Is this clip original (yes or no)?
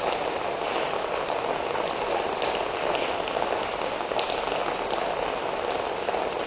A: yes